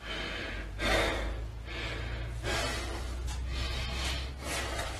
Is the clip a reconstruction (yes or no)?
no